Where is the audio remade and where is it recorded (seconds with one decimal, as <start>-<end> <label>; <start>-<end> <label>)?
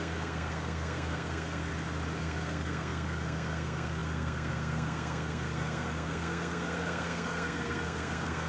0.0-1.7 remade; 1.7-2.2 recorded; 2.2-8.5 remade